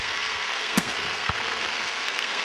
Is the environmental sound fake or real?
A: fake